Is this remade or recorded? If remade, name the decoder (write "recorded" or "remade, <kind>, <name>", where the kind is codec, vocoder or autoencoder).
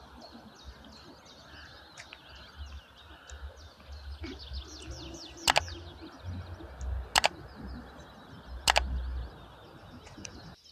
recorded